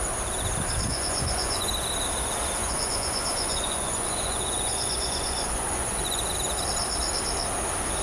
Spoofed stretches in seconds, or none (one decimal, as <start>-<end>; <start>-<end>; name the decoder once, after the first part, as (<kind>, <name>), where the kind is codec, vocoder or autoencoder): 0.9-1.7 (vocoder, Vocos); 2.6-6.2